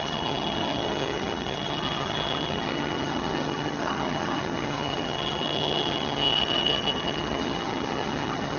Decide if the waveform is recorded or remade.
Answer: remade